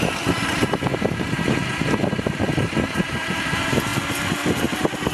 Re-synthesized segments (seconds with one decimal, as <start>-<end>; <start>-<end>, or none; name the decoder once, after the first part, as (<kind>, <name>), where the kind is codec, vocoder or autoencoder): 0.0-3.9 (vocoder, BigVGAN v2)